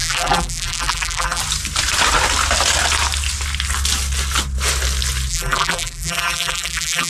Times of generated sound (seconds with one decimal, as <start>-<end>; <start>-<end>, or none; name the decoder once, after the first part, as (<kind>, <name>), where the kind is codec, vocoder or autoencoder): 0.0-1.4 (vocoder, BigVGAN v2); 5.3-7.1